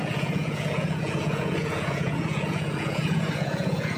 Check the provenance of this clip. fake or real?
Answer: fake